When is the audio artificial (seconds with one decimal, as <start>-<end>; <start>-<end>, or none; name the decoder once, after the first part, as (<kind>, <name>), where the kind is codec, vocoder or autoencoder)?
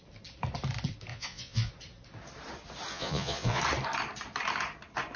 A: 1.1-1.7 (vocoder, Vocos); 2.9-3.6